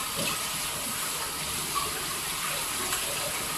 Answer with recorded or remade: recorded